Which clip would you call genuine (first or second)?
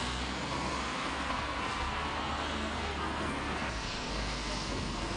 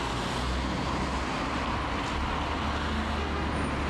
second